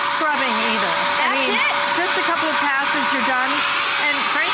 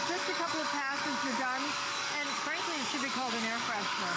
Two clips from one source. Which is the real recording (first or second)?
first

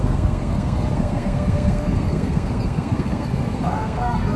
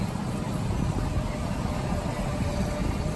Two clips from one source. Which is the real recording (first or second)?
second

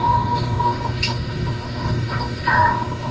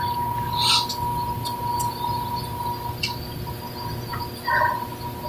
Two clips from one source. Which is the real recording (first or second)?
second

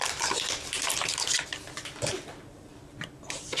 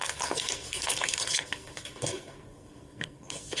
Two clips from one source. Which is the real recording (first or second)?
first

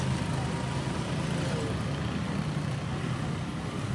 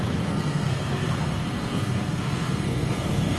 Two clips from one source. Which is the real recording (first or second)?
first